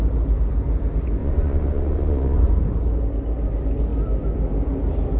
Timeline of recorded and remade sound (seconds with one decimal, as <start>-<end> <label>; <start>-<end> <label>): 0.0-1.2 recorded; 1.2-2.5 remade; 2.5-5.2 recorded